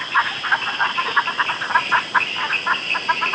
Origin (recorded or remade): recorded